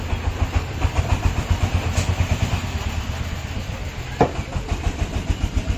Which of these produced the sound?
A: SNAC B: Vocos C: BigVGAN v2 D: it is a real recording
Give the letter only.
C